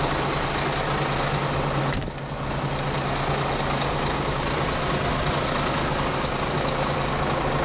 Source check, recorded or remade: recorded